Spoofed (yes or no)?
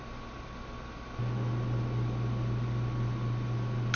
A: no